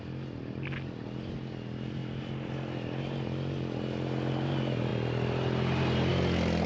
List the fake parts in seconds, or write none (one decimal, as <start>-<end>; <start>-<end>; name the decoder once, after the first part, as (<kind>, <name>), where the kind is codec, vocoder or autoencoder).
none